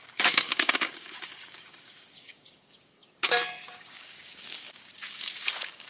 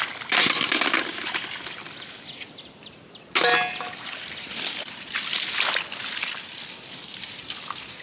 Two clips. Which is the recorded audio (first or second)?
second